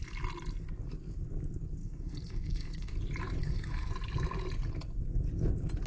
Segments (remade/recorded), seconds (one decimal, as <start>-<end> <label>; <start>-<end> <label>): 0.0-1.8 recorded; 1.8-2.9 remade; 2.9-3.4 recorded; 3.4-3.9 remade; 3.9-5.9 recorded